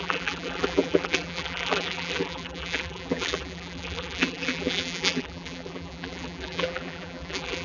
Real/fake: fake